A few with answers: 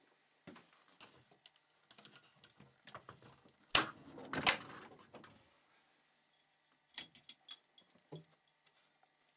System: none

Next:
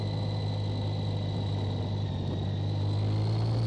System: none